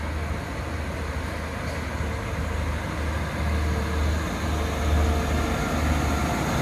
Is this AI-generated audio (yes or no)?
no